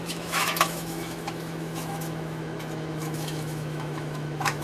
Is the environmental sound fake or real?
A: fake